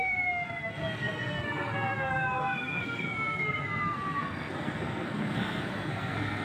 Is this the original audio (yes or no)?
no